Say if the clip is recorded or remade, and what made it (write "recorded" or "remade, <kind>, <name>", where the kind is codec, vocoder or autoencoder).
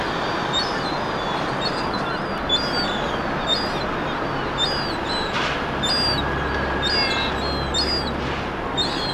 recorded